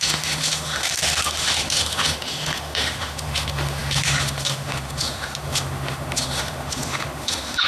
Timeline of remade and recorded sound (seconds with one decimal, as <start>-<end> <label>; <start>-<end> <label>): 0.0-7.7 remade